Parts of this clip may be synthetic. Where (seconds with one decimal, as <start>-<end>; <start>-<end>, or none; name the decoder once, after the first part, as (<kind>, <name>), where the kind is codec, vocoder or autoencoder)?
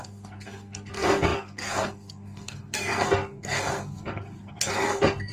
0.0-5.3 (codec, SNAC)